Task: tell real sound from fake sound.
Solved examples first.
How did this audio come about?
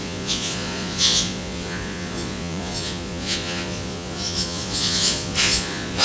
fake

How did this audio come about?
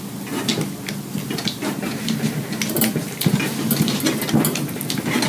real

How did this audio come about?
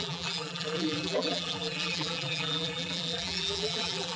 fake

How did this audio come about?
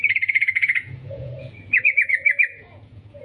fake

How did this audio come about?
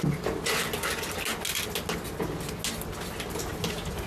real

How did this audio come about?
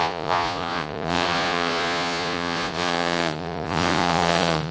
fake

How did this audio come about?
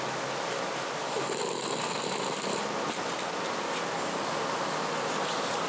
real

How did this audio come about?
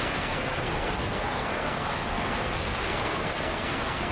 fake